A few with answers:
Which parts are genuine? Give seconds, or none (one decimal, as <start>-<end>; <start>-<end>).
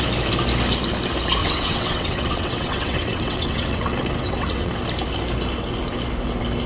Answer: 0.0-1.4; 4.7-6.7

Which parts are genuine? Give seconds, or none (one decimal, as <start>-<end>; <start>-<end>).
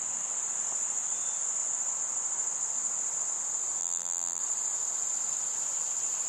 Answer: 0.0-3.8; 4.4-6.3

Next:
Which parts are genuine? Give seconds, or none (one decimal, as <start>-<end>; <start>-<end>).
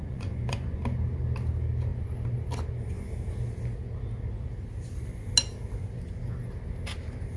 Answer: 0.8-7.4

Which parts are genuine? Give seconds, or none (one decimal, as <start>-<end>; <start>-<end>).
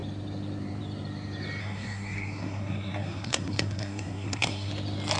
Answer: 0.0-1.6; 4.7-5.2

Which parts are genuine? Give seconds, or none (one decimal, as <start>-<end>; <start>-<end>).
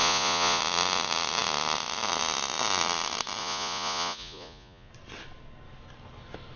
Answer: 0.6-3.4; 4.9-6.6